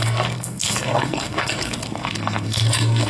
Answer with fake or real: fake